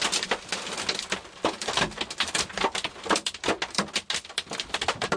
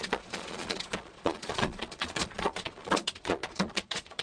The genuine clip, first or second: first